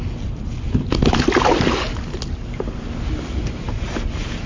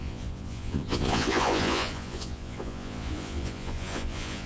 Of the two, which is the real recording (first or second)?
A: first